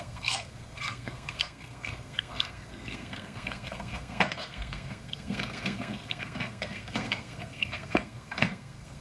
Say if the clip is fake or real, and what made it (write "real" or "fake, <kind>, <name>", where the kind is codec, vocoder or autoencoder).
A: fake, codec, SNAC